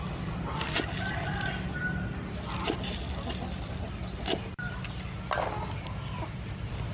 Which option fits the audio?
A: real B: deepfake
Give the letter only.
A